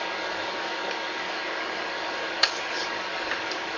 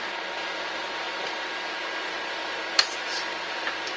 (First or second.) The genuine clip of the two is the second